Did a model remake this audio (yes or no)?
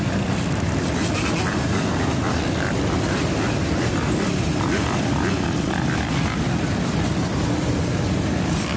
yes